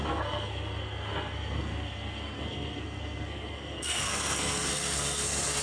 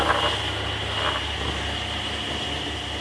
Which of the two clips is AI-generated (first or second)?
first